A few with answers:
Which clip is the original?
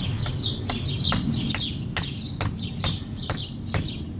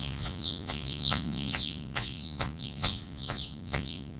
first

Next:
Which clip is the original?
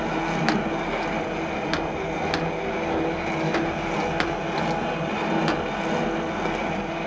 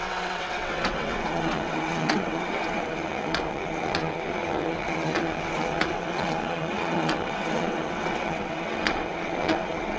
first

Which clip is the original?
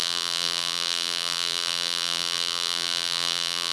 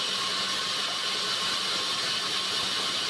second